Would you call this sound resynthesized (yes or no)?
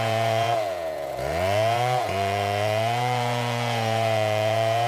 yes